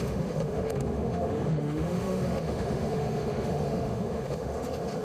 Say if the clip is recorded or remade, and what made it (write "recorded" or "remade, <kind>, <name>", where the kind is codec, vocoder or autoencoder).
remade, autoencoder, DAC-VAE